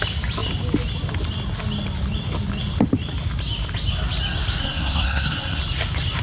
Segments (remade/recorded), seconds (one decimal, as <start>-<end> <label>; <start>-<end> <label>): 0.0-4.6 recorded; 4.6-5.6 remade; 5.6-6.2 recorded